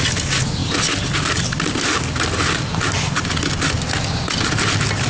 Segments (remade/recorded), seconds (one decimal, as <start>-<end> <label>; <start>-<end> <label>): 0.0-5.1 recorded